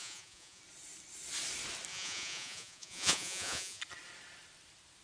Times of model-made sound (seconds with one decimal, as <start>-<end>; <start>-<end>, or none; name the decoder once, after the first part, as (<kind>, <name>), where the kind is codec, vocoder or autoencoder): 0.0-0.6 (vocoder, Vocos); 1.9-3.8